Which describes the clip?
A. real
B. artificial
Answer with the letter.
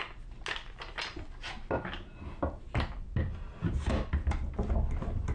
A